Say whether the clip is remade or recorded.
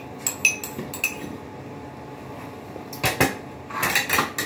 recorded